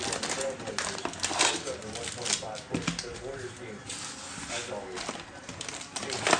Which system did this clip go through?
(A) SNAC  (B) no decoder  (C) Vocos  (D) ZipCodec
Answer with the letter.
B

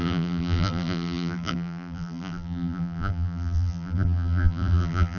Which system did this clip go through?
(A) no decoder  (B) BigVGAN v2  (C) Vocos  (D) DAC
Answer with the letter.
B